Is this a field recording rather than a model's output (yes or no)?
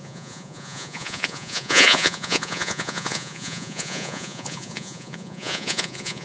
no